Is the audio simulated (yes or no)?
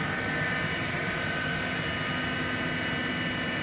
no